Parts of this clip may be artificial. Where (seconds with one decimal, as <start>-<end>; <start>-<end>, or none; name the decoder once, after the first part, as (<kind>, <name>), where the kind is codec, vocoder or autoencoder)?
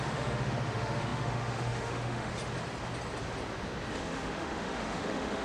0.0-2.3 (autoencoder, DAC-VAE); 3.9-5.4